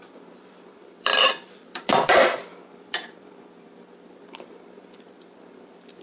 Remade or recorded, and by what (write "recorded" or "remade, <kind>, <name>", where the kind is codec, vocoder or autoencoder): remade, vocoder, BigVGAN v2